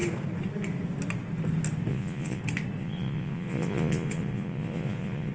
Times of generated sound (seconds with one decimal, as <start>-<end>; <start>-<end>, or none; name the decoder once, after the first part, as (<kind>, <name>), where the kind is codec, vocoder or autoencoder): 1.9-2.4 (vocoder, Vocos); 2.8-5.3